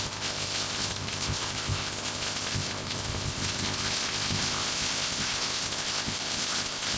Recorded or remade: remade